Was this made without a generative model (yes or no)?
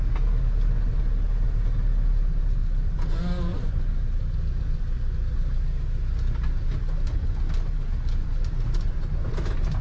yes